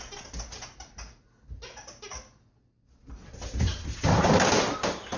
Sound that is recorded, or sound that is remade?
recorded